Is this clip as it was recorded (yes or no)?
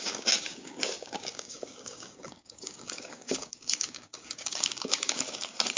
no